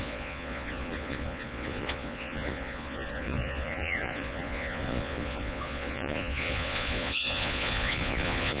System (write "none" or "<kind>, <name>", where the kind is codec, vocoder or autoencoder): vocoder, Vocos